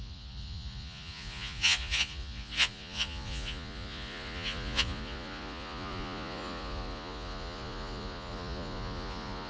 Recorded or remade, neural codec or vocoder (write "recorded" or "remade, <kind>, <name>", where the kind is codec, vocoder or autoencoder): remade, vocoder, Vocos